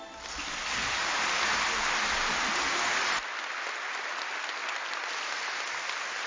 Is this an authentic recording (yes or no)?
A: yes